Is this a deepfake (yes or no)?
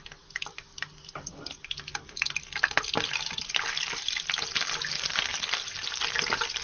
no